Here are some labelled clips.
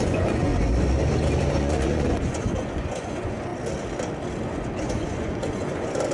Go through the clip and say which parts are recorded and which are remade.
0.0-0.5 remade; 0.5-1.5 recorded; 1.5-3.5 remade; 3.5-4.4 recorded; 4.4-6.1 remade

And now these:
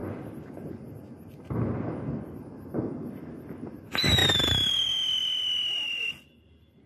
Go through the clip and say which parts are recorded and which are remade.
0.0-0.7 remade; 0.7-4.2 recorded; 4.2-4.7 remade; 4.7-6.9 recorded

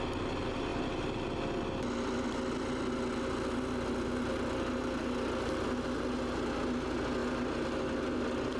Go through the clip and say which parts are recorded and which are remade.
0.0-8.6 recorded

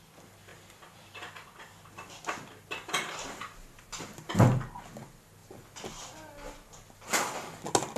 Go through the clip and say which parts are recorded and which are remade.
0.0-8.0 recorded